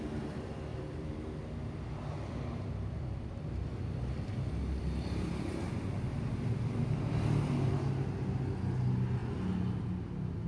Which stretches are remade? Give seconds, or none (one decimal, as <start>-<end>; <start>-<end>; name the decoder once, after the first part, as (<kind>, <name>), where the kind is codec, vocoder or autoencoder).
0.7-5.3 (vocoder, BigVGAN v2); 6.1-7.7